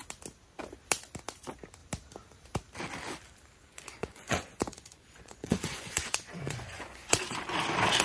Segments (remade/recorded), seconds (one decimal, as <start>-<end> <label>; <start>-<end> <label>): 0.0-3.6 recorded; 3.6-7.4 remade; 7.4-8.0 recorded